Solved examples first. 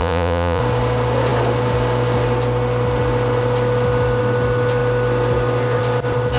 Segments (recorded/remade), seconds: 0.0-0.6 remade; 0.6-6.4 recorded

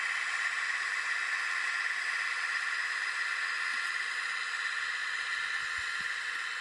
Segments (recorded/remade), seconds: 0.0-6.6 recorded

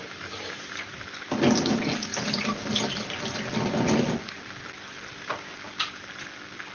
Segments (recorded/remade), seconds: 0.0-1.0 remade; 1.0-6.7 recorded

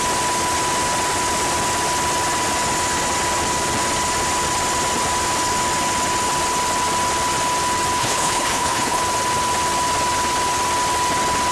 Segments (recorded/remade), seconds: 0.0-8.0 recorded; 8.0-9.0 remade; 9.0-11.5 recorded